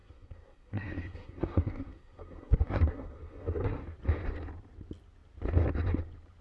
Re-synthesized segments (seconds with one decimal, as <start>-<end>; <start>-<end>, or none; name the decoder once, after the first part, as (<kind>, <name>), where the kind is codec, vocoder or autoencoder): 0.0-3.8 (codec, SNAC)